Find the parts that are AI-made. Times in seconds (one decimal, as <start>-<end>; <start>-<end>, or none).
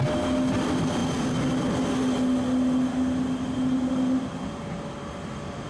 none